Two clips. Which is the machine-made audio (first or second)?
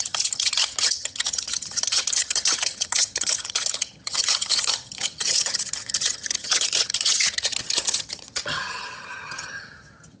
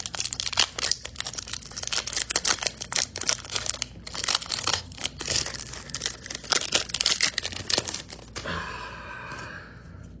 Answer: first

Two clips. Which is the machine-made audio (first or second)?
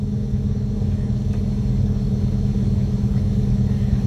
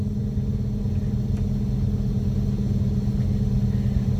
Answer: first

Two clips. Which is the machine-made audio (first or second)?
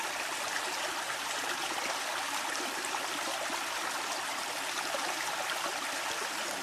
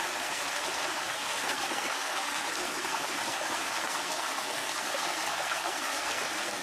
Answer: second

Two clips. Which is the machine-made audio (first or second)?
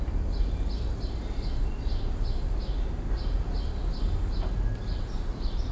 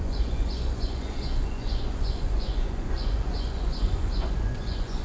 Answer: second